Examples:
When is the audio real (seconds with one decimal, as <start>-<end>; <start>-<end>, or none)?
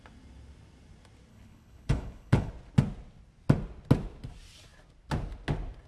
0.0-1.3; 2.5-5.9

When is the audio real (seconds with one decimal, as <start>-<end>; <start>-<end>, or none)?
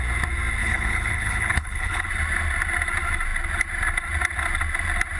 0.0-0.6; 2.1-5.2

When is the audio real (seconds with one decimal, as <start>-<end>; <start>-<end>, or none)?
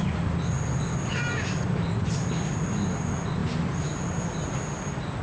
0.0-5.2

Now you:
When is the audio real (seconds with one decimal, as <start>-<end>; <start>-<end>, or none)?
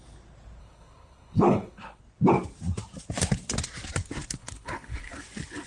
0.0-0.6; 2.0-4.4; 5.2-5.7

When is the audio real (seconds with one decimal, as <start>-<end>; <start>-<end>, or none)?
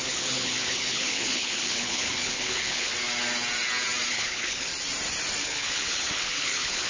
2.9-4.1; 4.7-5.4